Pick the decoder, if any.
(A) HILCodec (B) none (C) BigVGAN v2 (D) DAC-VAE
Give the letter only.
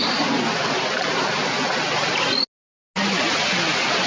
B